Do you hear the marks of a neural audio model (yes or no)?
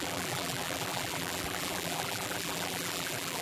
yes